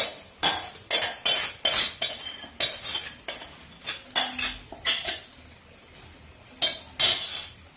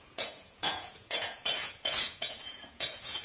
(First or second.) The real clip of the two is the first